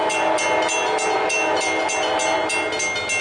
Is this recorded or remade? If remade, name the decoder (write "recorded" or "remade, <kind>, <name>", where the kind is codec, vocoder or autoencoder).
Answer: recorded